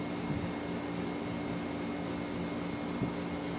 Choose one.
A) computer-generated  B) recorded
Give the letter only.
B